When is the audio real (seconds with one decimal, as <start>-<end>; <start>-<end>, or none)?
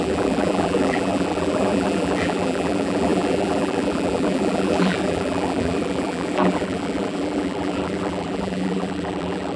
none